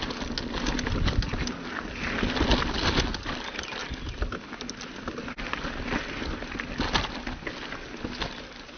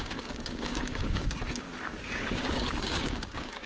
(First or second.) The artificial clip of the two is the second